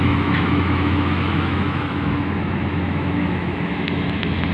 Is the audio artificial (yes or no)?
yes